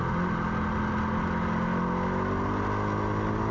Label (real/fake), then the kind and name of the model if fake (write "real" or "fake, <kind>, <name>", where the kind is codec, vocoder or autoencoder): real